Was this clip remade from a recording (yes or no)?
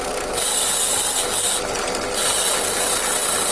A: no